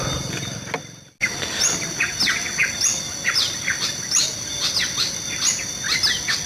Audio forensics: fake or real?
real